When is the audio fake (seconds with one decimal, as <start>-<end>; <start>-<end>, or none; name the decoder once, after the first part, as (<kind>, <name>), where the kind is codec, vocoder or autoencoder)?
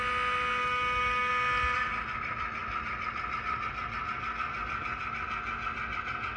0.6-1.3 (autoencoder, DAC-VAE)